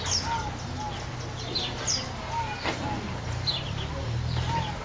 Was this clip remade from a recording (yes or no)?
no